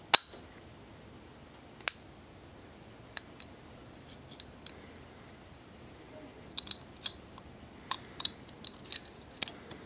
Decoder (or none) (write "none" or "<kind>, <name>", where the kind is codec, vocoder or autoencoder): none